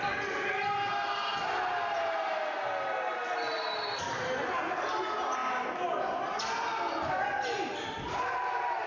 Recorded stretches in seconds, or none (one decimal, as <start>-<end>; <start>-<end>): 0.0-8.9